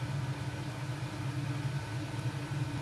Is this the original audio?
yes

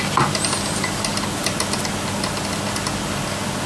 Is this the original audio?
yes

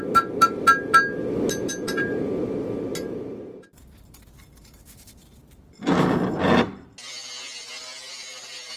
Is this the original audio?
yes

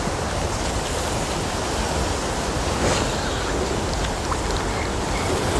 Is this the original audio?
yes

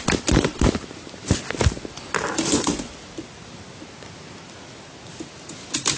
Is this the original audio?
yes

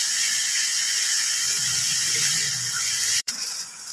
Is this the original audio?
no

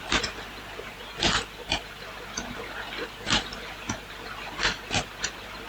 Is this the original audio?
yes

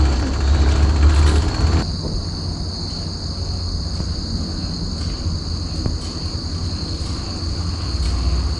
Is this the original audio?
yes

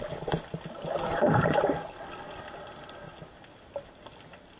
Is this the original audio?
yes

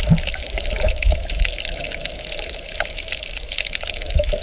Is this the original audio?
no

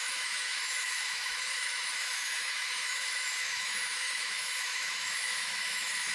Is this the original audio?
no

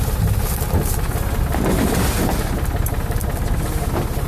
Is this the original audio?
yes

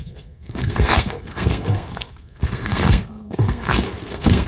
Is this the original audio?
no